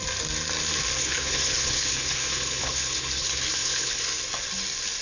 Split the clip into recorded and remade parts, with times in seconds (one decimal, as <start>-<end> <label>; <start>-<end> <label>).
0.0-1.0 recorded; 1.0-4.0 remade; 4.0-5.0 recorded

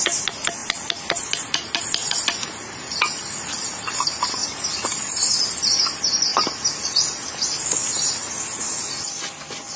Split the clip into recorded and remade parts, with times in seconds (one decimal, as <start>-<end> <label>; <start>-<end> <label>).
0.0-9.8 recorded

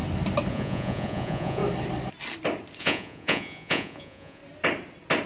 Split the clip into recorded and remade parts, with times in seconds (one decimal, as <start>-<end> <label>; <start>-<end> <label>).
0.0-0.5 recorded; 0.5-1.6 remade; 1.6-2.8 recorded; 2.8-4.4 remade; 4.4-5.3 recorded